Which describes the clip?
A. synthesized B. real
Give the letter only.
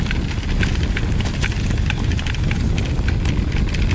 B